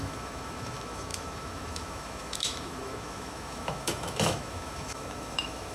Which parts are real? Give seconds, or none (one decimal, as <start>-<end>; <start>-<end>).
none